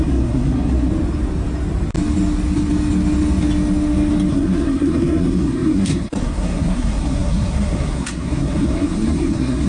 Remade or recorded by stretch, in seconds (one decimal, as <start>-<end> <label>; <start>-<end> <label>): 0.0-0.9 remade; 0.9-4.3 recorded; 4.3-9.7 remade